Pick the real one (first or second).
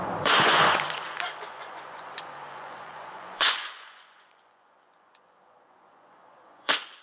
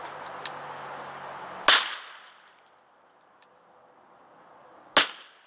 second